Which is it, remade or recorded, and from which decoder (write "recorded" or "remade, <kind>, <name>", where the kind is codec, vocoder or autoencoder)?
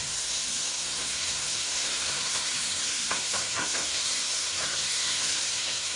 remade, codec, SNAC